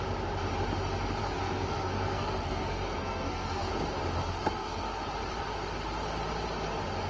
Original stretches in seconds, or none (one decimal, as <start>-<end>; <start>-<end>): 0.0-1.2; 3.7-4.2; 5.0-7.1